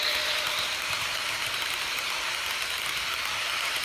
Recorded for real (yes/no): no